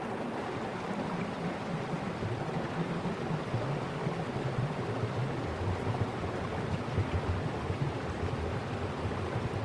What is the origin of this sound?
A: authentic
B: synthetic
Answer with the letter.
A